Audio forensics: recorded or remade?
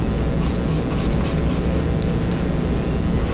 recorded